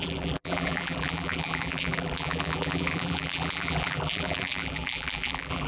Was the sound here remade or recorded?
remade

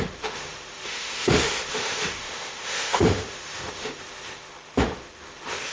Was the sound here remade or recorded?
remade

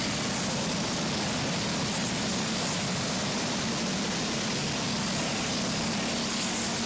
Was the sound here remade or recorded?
recorded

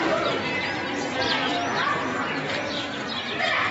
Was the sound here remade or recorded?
recorded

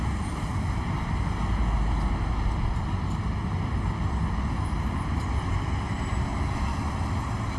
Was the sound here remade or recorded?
recorded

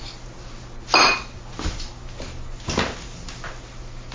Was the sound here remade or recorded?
recorded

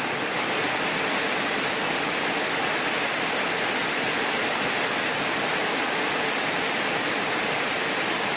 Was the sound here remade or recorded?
recorded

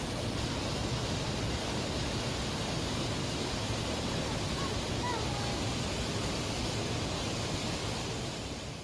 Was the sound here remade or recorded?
recorded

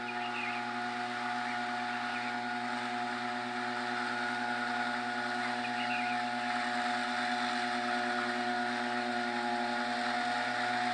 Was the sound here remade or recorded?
recorded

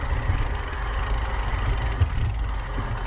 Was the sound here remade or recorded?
recorded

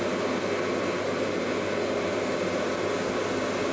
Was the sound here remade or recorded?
recorded